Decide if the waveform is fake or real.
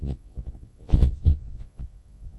fake